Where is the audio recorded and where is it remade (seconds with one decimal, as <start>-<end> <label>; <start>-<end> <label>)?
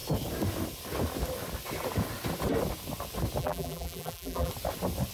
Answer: 0.0-3.4 recorded; 3.4-4.5 remade; 4.5-5.1 recorded